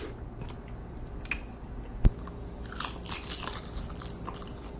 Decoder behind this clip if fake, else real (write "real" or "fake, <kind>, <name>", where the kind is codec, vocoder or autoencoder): real